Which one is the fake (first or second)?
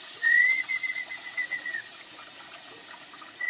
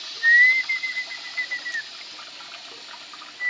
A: first